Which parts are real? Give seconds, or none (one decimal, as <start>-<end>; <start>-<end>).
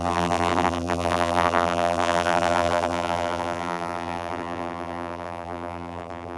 none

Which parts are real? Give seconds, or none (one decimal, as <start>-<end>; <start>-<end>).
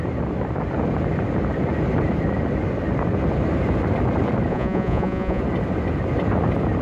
0.0-4.5; 5.4-6.8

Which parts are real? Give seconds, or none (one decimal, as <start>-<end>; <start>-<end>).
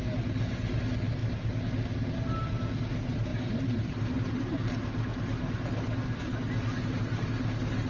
0.0-7.9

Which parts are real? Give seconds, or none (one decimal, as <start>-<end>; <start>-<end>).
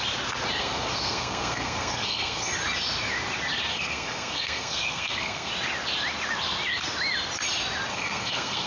0.0-0.6; 2.5-3.7; 5.5-7.9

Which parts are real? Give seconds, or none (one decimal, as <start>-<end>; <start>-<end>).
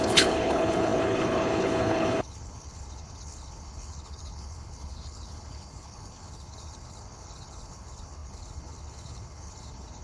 none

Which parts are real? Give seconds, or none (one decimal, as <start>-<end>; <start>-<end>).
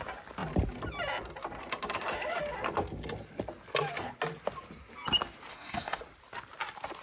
0.0-5.5; 6.0-7.0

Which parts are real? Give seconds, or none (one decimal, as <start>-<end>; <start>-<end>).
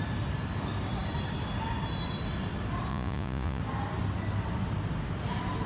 0.0-2.9; 3.6-5.7